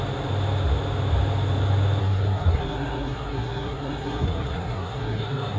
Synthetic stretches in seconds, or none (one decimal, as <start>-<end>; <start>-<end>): 2.0-5.6